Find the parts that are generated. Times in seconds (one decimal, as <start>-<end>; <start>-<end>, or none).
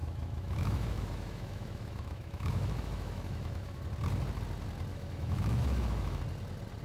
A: 0.0-3.8; 4.9-6.2